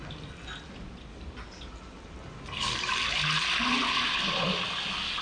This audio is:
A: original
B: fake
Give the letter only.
A